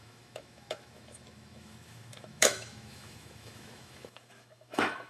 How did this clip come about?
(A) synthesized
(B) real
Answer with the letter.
A